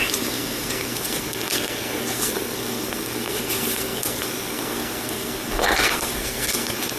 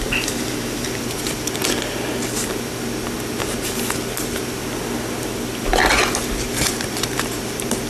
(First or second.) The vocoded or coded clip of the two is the first